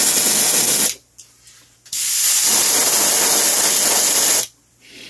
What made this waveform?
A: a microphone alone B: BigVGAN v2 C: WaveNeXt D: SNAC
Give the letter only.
A